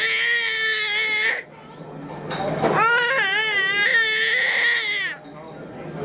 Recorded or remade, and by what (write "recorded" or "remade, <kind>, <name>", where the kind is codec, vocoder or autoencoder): recorded